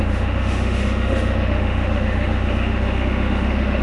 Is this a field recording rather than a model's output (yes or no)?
no